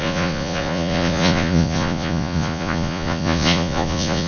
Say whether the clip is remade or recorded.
remade